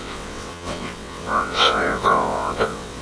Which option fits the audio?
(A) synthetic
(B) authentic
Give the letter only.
A